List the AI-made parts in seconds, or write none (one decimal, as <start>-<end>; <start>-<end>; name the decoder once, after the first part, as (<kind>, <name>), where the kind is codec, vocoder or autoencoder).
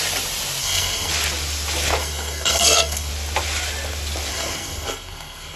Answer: 0.6-1.1 (codec, SNAC); 2.0-3.1; 4.3-5.6